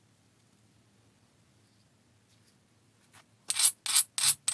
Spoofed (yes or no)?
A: no